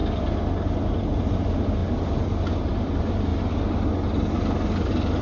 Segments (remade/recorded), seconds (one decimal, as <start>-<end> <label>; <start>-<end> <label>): 0.0-0.9 recorded; 0.9-1.8 remade; 1.8-2.7 recorded; 2.7-3.3 remade; 3.3-5.2 recorded